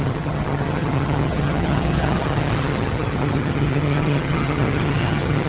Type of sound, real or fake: fake